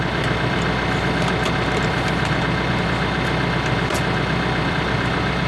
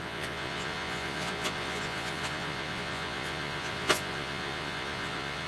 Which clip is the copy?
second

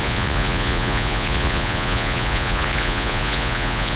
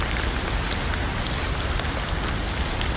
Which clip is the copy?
first